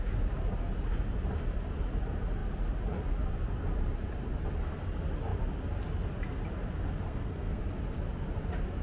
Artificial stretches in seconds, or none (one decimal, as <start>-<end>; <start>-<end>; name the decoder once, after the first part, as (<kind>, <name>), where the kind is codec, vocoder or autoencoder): 7.1-7.6 (codec, SNAC)